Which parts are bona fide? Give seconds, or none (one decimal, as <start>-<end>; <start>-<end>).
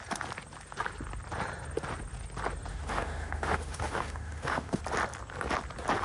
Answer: 0.0-2.7; 4.8-6.0